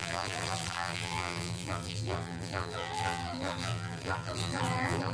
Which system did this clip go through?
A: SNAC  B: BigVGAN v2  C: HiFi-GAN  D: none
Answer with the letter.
B